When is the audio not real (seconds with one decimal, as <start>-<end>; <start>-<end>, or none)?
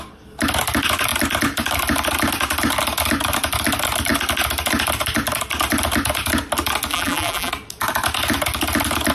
6.9-7.5